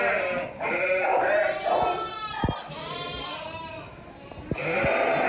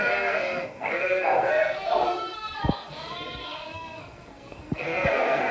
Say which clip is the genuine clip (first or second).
first